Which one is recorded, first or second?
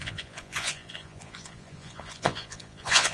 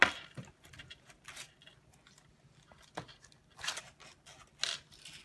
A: second